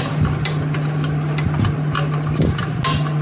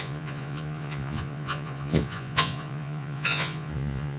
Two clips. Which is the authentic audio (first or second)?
first